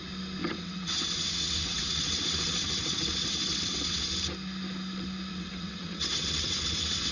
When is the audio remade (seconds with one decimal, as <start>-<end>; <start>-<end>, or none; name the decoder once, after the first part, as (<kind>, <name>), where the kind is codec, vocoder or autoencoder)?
0.4-4.1 (vocoder, WaveNeXt); 5.3-7.1